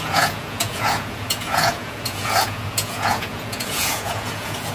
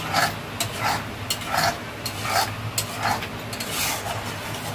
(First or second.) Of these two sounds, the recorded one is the second